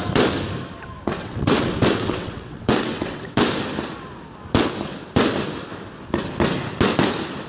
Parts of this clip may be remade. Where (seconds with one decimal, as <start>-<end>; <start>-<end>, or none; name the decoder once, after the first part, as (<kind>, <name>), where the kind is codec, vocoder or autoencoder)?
1.2-3.4 (vocoder, WaveNeXt)